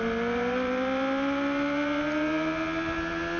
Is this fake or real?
real